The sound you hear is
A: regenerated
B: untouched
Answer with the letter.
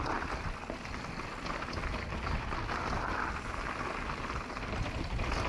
B